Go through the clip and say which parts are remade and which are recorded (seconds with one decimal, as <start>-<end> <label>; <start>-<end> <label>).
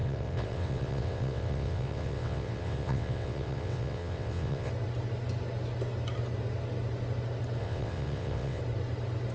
0.0-4.7 remade; 4.7-7.6 recorded; 7.6-8.6 remade; 8.6-9.3 recorded